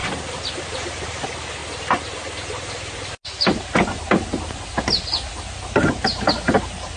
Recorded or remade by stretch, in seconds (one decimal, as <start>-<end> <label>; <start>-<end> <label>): 0.0-0.6 recorded; 0.6-1.6 remade; 1.6-5.8 recorded; 5.8-7.0 remade